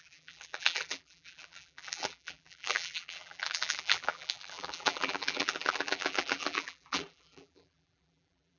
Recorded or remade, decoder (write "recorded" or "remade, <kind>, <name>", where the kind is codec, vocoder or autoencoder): remade, vocoder, BigVGAN v2